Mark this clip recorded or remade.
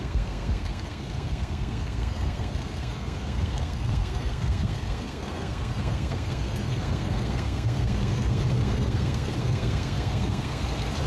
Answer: remade